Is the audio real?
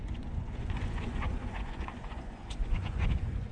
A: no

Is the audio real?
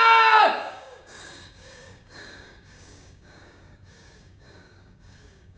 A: no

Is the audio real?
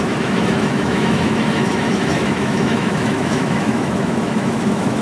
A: no